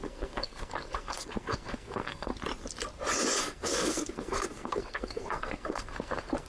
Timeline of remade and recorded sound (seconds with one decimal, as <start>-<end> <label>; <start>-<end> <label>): 0.0-2.3 remade; 2.3-3.4 recorded; 3.4-6.5 remade